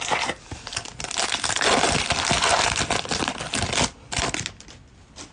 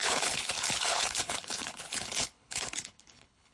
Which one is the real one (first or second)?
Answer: first